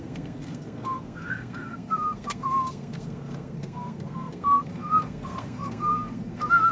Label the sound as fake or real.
fake